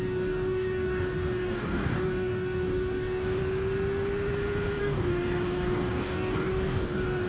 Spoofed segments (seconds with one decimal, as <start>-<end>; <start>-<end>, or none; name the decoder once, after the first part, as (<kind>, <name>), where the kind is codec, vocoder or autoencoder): 0.0-3.4 (codec, DAC); 4.8-7.3